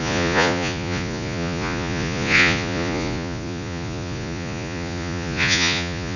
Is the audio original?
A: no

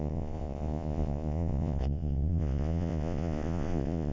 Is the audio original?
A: no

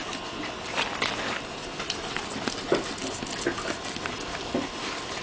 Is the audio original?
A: yes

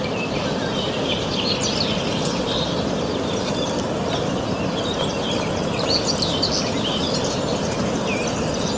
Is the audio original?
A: yes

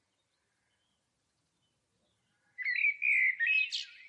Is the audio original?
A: yes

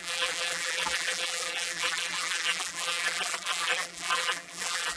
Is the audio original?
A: no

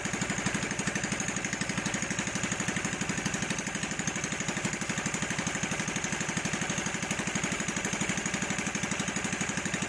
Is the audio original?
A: yes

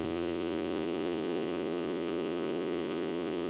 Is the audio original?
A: no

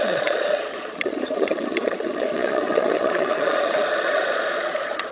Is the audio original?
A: no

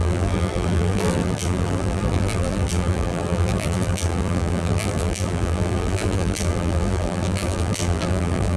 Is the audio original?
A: no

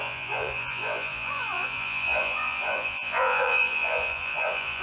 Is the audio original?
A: no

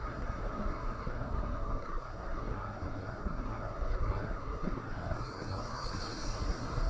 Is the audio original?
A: no